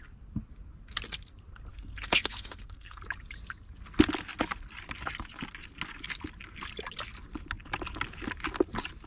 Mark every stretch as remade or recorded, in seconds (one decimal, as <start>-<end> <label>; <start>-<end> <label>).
0.0-1.7 recorded; 1.7-3.0 remade; 3.0-9.1 recorded